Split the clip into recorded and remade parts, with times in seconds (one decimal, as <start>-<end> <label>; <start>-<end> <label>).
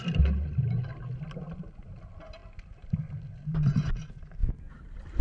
0.0-5.2 recorded